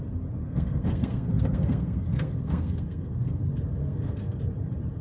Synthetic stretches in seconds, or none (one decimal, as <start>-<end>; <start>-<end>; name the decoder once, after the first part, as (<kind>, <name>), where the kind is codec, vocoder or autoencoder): 0.4-3.4 (codec, SNAC); 3.8-4.4